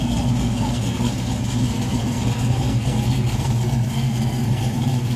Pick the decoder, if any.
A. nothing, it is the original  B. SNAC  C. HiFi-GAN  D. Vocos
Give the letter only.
B